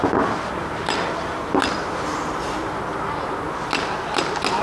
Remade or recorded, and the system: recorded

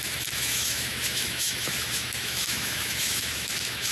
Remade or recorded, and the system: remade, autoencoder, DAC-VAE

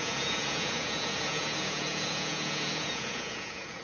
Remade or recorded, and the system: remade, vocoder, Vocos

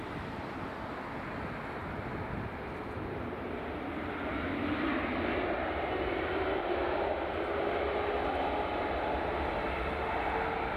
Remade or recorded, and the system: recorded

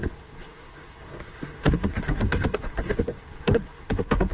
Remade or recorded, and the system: remade, codec, SNAC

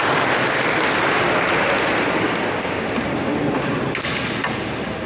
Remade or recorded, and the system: recorded